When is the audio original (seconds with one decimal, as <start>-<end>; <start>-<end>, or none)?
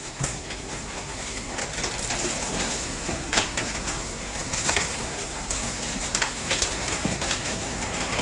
1.6-2.4